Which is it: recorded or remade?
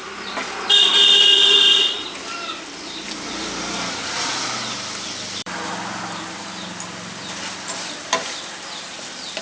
remade